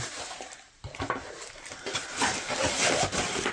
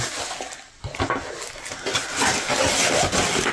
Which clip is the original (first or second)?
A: second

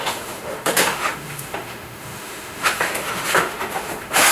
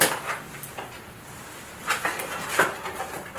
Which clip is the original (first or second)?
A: second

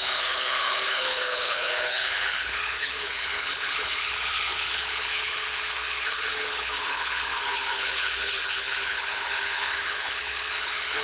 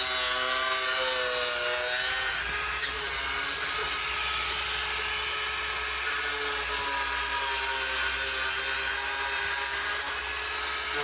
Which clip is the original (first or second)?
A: second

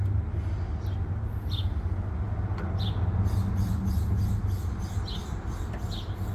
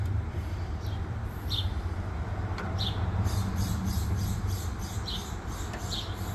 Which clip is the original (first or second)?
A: first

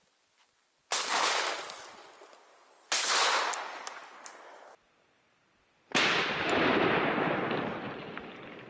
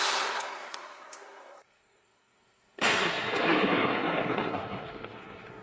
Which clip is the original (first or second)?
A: first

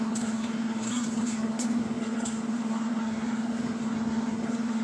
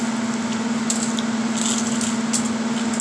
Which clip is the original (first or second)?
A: second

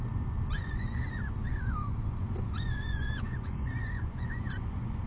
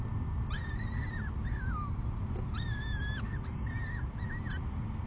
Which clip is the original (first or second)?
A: second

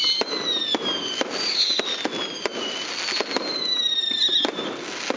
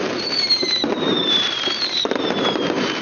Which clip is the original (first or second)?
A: first